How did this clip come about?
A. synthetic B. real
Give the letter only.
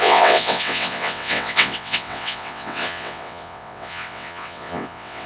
A